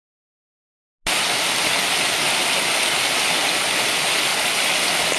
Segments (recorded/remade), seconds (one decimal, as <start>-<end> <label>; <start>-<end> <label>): 0.0-5.2 recorded